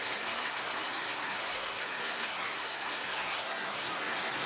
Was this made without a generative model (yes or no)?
no